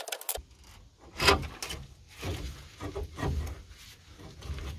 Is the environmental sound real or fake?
real